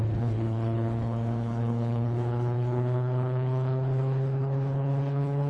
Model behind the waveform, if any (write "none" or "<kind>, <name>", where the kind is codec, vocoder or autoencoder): codec, HILCodec